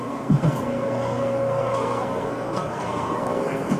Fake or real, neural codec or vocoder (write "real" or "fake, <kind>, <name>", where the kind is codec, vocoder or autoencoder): fake, codec, SNAC